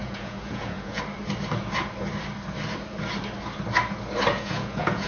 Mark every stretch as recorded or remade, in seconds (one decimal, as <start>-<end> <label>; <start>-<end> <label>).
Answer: 0.0-1.0 remade; 1.0-4.3 recorded; 4.3-5.1 remade